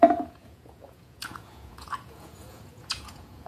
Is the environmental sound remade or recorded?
remade